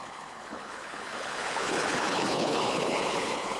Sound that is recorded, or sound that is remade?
remade